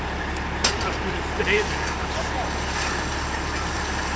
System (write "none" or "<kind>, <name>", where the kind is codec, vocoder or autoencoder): none